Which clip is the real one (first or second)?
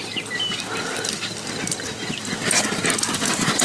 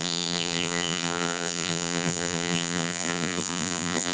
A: first